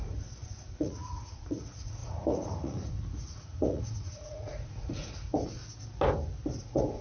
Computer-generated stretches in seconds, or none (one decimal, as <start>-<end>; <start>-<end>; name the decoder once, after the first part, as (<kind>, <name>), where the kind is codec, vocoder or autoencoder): 0.0-5.6 (vocoder, Vocos); 6.6-7.0